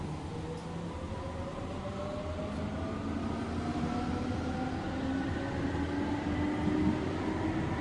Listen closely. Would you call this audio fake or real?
real